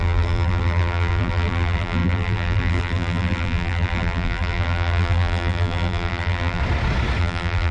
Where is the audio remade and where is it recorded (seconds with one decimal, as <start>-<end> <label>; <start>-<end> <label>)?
0.0-6.6 remade; 6.6-7.2 recorded; 7.2-7.7 remade